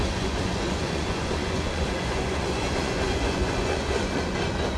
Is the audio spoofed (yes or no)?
yes